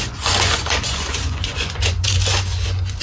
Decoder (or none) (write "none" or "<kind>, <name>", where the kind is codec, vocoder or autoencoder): vocoder, Vocos